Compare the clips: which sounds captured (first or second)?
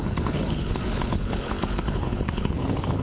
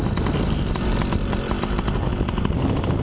second